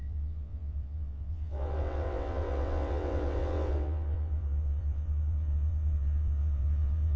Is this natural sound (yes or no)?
no